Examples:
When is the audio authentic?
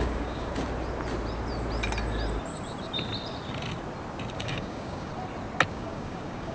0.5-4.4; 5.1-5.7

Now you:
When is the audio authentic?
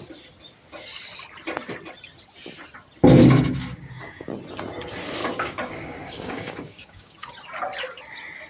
0.0-3.2; 4.3-5.2; 7.3-8.5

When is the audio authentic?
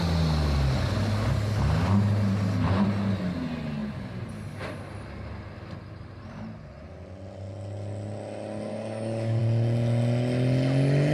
0.0-8.7; 9.4-11.1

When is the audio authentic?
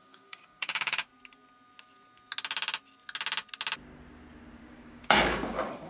1.1-4.6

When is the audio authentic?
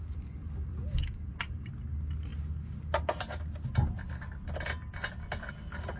0.0-0.7; 1.3-6.0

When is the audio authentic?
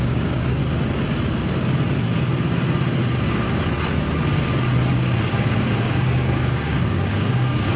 0.6-5.3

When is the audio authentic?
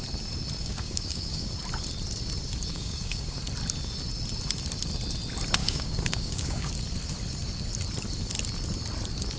0.0-0.6; 1.5-2.7; 3.4-5.6; 6.7-9.4